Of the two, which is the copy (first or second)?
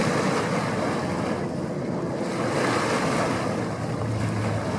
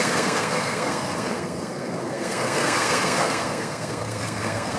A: second